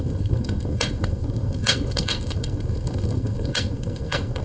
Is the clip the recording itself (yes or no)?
no